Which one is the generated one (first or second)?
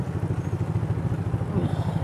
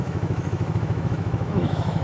second